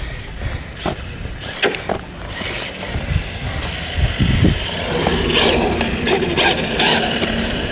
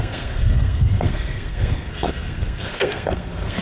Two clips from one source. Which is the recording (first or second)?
first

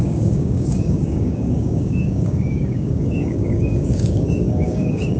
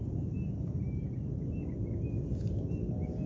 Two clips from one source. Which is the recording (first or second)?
second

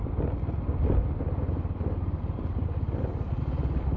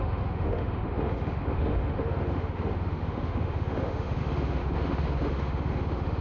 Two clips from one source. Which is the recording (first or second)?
first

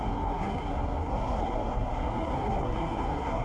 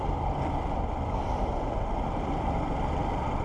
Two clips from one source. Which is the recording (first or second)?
second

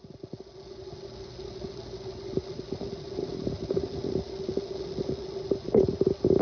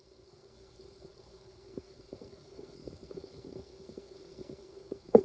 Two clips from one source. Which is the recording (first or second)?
first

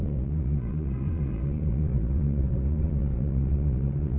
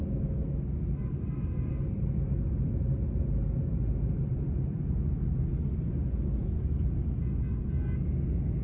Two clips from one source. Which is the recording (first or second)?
second